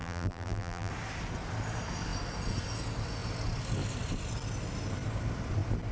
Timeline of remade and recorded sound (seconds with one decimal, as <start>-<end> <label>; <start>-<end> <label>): 0.0-0.9 remade; 0.9-5.9 recorded